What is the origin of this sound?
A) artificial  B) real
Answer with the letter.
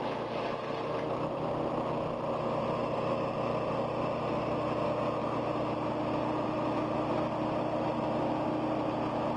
B